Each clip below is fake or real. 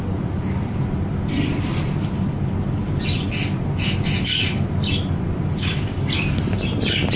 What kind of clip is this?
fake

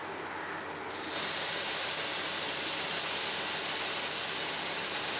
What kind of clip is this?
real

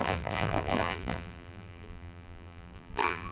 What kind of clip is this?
fake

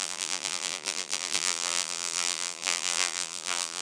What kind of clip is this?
fake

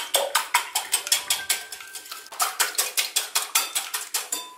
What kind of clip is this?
real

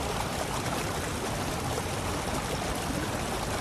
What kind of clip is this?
real